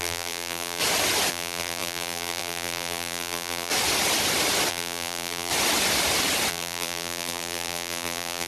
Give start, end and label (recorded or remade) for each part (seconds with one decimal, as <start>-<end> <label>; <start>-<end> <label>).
0.0-0.8 remade; 0.8-1.3 recorded; 1.3-3.7 remade; 3.7-4.7 recorded; 4.7-5.5 remade; 5.5-6.5 recorded; 6.5-8.5 remade